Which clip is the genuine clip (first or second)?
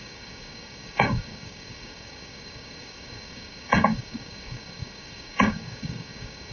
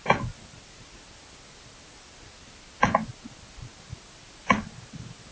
second